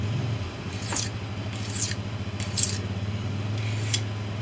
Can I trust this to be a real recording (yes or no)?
yes